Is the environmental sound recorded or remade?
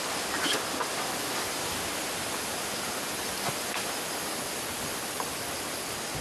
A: recorded